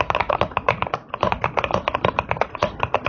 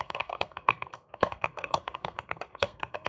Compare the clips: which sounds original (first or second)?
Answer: first